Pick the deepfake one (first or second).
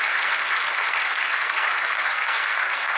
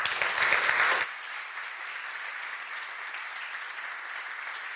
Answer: first